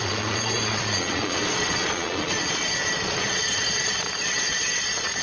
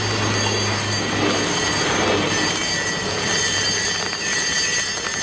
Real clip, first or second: second